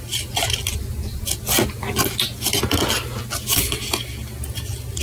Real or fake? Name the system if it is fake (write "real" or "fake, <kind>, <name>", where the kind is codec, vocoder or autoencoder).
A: real